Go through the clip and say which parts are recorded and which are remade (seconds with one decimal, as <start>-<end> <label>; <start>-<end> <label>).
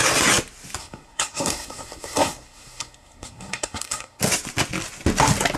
0.0-0.8 recorded; 0.8-4.2 remade; 4.2-5.6 recorded